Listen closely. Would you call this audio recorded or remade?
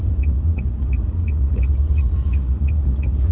remade